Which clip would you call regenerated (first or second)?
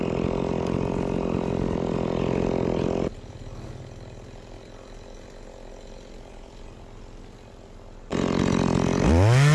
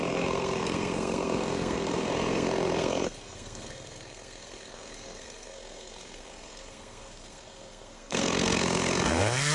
second